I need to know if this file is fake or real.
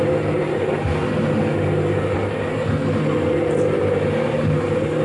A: real